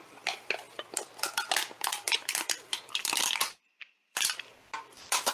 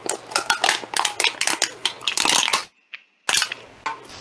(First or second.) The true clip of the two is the second